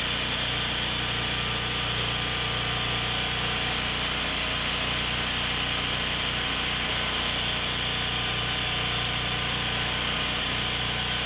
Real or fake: real